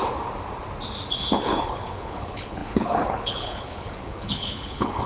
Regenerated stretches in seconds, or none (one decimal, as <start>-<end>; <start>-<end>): 1.3-5.1

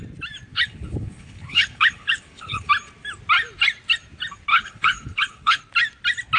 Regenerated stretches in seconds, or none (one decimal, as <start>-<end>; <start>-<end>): 0.5-2.7; 4.5-5.6

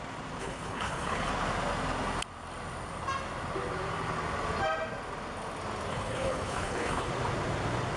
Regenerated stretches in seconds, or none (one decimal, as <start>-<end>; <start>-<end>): 0.4-1.3; 5.9-7.1

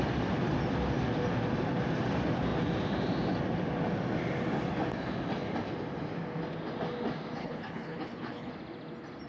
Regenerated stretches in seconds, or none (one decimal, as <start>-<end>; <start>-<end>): 7.4-8.5

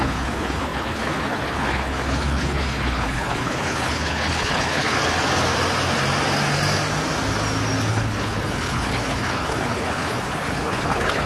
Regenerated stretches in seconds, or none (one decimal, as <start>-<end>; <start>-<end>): 0.0-5.0; 7.9-11.3

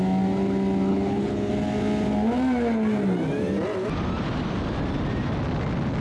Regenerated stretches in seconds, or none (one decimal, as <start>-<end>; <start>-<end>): 0.9-1.5

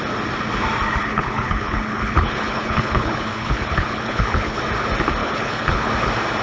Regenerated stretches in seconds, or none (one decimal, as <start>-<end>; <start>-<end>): 1.0-4.6; 5.2-5.9